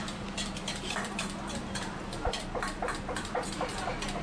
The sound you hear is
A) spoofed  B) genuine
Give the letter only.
A